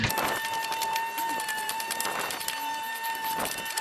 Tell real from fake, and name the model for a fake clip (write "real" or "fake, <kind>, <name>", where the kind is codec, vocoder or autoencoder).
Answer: real